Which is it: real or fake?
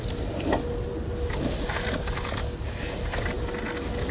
real